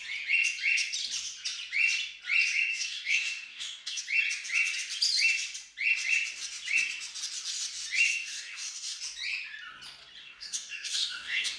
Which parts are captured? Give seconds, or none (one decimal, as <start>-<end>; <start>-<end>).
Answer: 0.0-2.7; 4.0-8.1; 9.0-10.2